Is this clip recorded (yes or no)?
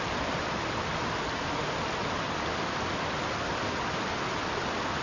yes